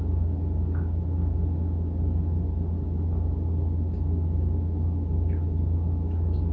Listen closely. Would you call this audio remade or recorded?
recorded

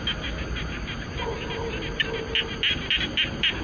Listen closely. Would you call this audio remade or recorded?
recorded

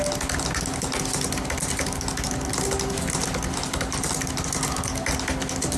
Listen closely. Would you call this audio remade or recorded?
recorded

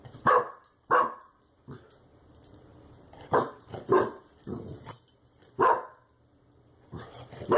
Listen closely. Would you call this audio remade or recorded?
remade